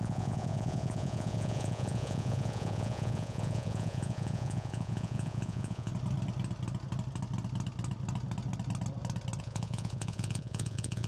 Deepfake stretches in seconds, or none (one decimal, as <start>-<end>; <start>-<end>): 0.0-5.9; 9.4-11.1